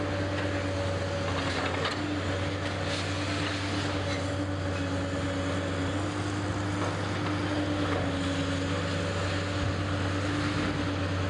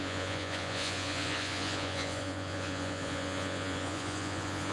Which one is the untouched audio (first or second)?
first